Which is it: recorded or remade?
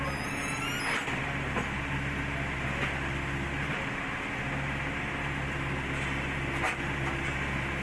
recorded